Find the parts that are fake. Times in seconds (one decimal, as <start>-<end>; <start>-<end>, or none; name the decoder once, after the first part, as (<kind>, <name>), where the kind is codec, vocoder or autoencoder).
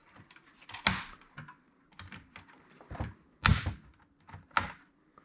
none